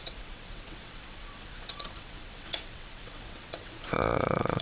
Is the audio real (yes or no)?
no